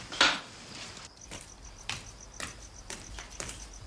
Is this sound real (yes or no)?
yes